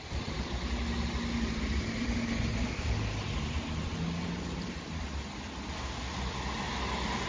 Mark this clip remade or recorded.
recorded